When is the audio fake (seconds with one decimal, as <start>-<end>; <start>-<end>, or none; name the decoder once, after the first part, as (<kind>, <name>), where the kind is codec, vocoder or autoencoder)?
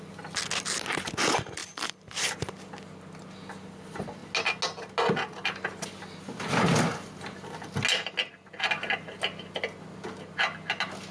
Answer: 1.6-2.7 (vocoder, BigVGAN v2)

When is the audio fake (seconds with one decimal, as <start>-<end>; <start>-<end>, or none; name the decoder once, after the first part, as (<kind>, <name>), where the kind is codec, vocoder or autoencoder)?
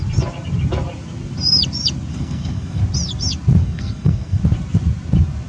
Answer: 2.1-2.8 (codec, SNAC); 3.6-4.4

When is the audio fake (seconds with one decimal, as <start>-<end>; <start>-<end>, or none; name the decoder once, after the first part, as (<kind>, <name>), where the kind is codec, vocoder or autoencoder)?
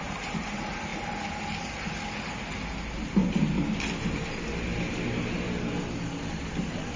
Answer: none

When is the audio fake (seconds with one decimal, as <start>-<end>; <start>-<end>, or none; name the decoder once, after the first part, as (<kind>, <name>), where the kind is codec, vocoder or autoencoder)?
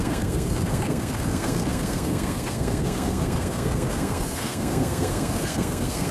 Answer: 0.0-6.1 (codec, SNAC)